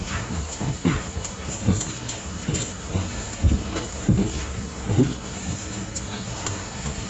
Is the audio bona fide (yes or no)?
no